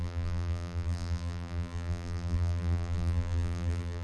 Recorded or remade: remade